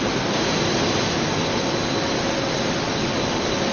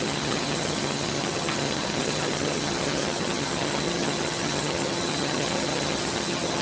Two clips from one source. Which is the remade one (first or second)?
second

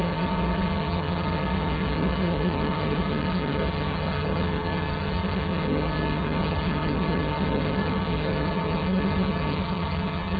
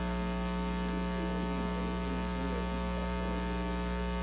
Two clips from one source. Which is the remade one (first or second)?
first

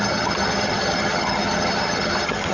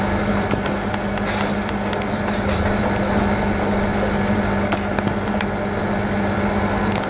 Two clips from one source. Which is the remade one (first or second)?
first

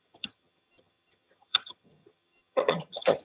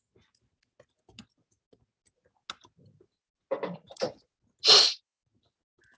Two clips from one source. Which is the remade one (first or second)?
first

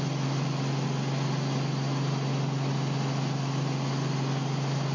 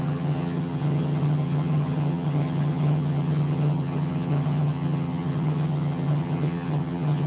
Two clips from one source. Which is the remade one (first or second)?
second